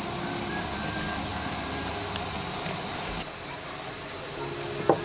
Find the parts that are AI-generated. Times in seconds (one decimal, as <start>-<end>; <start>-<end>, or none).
none